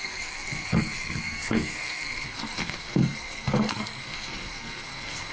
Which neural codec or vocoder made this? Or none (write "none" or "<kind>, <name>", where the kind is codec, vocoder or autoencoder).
codec, SNAC